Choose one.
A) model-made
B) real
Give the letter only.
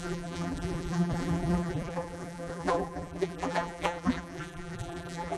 A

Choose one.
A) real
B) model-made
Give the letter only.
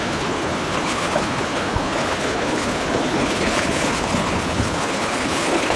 B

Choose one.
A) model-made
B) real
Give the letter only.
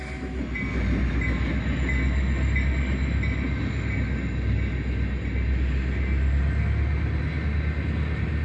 B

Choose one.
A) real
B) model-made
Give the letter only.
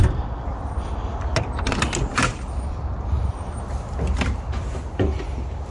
A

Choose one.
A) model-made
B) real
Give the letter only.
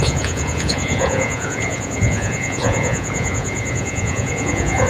A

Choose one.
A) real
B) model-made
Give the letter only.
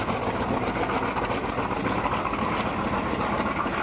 A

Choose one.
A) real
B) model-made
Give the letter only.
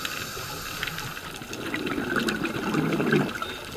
A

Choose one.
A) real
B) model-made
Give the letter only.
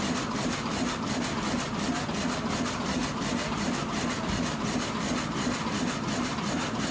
A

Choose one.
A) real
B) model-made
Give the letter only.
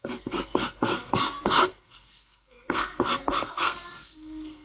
B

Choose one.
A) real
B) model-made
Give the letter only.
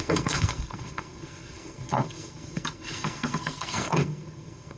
B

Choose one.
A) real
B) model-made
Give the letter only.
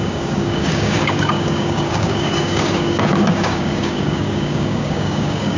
B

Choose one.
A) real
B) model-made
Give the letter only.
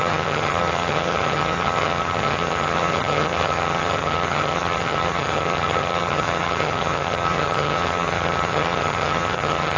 B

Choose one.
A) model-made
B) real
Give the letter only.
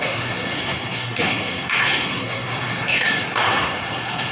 A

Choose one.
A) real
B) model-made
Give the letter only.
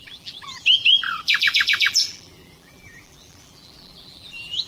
B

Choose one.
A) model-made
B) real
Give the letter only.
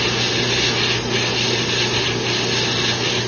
B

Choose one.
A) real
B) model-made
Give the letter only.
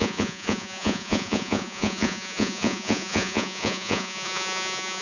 B